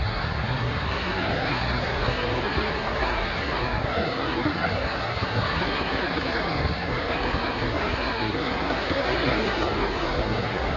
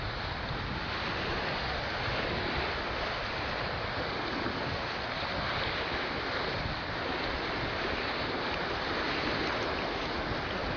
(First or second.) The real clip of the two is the second